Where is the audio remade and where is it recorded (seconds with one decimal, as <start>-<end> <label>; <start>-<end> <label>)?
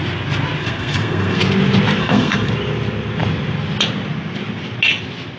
0.0-0.6 recorded; 0.6-1.4 remade; 1.4-2.0 recorded; 2.0-2.5 remade; 2.5-5.4 recorded